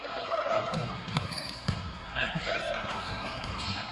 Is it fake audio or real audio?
fake